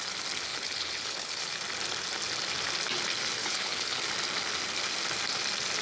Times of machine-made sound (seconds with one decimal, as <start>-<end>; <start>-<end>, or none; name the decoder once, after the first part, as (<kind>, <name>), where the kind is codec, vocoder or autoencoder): 0.5-1.4 (codec, HILCodec); 3.4-4.0